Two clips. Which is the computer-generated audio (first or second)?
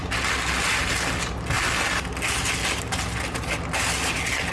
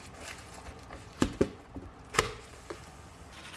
second